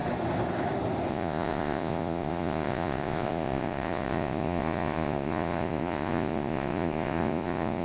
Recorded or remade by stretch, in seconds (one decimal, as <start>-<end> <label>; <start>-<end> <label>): 0.0-1.1 recorded; 1.1-7.8 remade